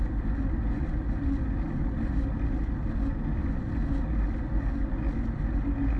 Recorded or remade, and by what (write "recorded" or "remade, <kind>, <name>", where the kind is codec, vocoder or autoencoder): recorded